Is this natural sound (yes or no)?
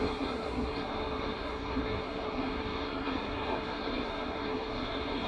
no